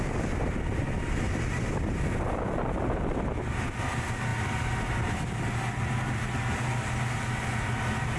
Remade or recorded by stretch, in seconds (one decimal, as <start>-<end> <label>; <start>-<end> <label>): 0.0-8.2 recorded